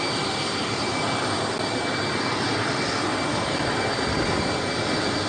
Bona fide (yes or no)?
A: yes